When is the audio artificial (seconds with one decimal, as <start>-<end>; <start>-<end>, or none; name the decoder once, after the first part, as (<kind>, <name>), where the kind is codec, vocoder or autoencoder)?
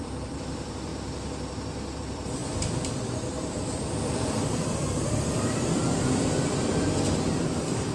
0.0-0.9 (vocoder, BigVGAN v2); 2.0-7.9